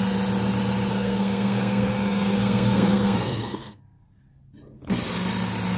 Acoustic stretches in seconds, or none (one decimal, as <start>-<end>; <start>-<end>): 0.0-0.9; 3.8-5.8